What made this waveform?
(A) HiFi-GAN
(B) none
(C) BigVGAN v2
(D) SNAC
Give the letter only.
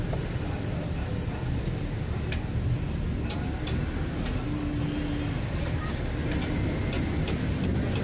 B